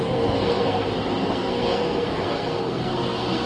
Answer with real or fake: fake